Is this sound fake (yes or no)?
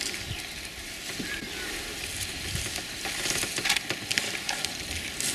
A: no